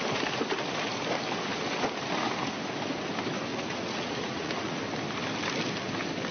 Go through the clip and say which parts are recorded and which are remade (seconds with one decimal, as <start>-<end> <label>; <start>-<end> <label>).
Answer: 0.0-3.5 recorded; 3.5-4.8 remade; 4.8-6.3 recorded